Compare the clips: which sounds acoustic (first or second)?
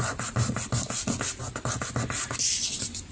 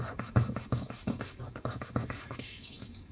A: first